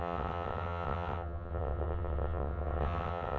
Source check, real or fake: fake